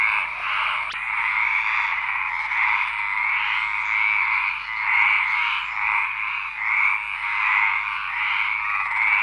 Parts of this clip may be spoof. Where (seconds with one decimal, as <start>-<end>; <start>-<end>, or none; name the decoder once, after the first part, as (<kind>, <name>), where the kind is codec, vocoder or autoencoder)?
1.9-2.4 (vocoder, BigVGAN v2)